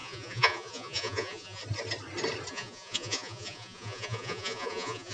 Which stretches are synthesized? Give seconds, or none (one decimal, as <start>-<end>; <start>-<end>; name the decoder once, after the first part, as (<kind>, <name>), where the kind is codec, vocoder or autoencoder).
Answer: 0.0-1.6 (vocoder, Vocos); 2.5-5.1